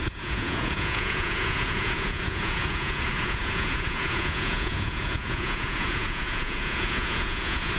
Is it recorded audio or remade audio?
remade